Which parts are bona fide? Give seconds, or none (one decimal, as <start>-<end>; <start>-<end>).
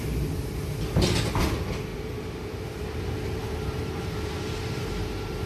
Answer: 0.0-1.9